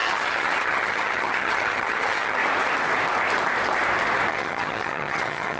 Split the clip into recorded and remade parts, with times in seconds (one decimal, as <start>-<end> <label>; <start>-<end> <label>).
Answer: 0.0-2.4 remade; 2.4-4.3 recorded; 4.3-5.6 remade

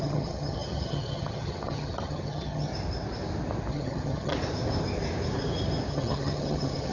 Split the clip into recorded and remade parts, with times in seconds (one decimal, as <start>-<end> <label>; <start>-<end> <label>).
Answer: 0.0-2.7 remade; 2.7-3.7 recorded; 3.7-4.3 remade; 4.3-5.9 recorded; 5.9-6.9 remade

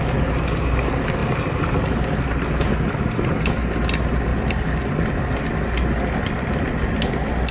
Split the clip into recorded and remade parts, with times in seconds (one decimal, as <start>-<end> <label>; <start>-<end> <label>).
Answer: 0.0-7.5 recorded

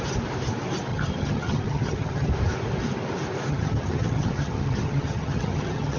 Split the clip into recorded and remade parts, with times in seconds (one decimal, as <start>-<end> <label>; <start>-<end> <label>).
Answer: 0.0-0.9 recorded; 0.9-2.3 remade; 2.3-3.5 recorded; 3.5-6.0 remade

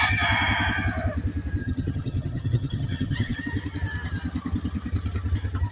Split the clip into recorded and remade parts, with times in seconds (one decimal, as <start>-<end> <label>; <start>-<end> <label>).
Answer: 0.0-1.6 recorded; 1.6-3.4 remade; 3.4-5.7 recorded

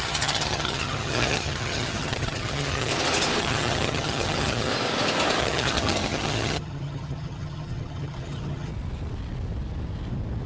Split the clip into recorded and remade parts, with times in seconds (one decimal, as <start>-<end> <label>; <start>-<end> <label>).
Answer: 0.0-2.9 remade; 2.9-3.4 recorded; 3.4-4.7 remade; 4.7-5.4 recorded; 5.4-8.7 remade; 8.7-10.5 recorded